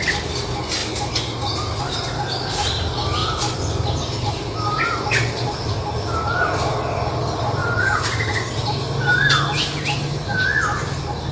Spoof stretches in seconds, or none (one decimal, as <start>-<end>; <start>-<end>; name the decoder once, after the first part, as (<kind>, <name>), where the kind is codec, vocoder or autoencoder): 7.6-8.3 (vocoder, BigVGAN v2)